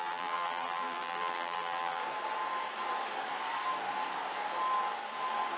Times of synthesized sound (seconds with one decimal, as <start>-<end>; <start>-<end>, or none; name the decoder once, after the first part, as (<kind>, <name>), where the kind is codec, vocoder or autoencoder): 0.0-2.0 (vocoder, BigVGAN v2)